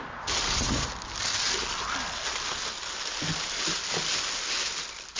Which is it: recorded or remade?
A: recorded